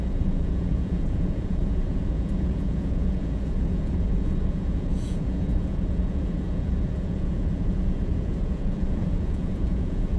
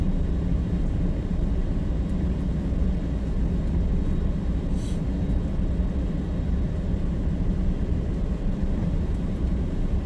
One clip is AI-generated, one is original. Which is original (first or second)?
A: second